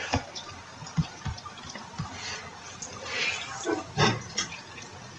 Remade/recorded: recorded